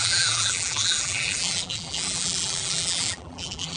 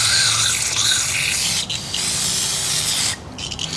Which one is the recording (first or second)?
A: second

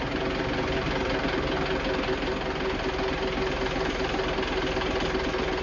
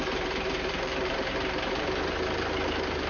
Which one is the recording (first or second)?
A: first